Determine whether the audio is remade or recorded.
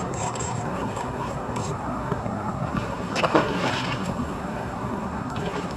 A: remade